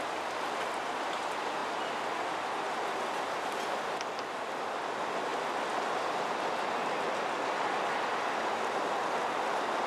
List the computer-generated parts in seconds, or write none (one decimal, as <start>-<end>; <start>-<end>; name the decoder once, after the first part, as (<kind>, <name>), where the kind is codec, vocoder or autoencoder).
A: 6.8-7.4 (vocoder, BigVGAN v2)

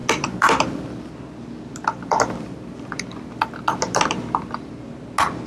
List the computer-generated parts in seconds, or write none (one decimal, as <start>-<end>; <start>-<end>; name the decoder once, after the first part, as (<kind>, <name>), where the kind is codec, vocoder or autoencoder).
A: 0.0-1.1 (vocoder, BigVGAN v2); 1.9-4.7

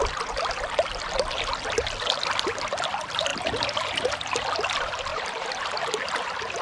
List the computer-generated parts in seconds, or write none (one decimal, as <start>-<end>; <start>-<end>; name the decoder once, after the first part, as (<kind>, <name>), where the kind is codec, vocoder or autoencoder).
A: 3.3-3.9 (vocoder, BigVGAN v2); 5.1-5.6

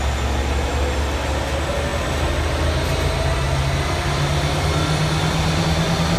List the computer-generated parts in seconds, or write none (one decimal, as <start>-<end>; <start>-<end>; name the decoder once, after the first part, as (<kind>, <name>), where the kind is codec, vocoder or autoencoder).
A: none

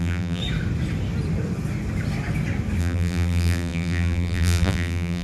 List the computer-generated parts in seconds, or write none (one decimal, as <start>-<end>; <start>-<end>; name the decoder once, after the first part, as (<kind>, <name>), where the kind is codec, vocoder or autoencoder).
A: 0.0-0.4 (vocoder, BigVGAN v2); 2.8-5.2

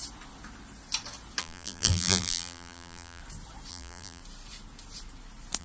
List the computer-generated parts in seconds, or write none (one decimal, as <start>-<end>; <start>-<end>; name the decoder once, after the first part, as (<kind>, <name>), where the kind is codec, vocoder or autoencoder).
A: 1.4-3.2 (vocoder, BigVGAN v2); 3.7-4.2

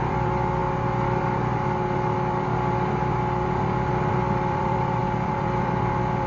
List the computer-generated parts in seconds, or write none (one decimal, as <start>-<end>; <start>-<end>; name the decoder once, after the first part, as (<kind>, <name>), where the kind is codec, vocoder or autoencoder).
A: 0.0-0.6 (vocoder, BigVGAN v2); 4.1-6.3

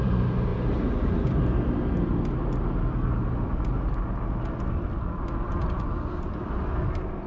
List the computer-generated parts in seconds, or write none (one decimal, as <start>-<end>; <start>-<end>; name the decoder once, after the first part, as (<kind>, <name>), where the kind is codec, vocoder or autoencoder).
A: none